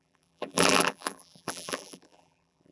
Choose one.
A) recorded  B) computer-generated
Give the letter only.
B